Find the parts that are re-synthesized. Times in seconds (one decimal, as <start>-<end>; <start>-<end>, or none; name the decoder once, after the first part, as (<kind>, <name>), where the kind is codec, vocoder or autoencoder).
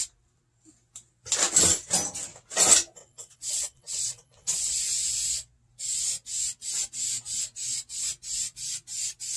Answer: 3.0-4.8 (vocoder, WaveNeXt)